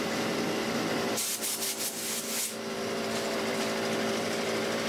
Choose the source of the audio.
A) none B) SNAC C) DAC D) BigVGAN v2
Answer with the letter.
A